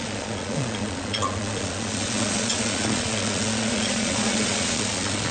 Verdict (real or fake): fake